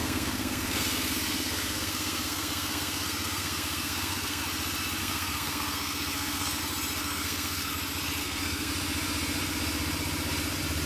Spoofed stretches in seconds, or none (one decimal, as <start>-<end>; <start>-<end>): 0.0-4.4; 5.0-6.6; 7.0-7.7; 8.2-8.7